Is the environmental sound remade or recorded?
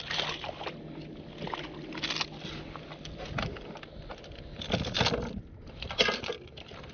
recorded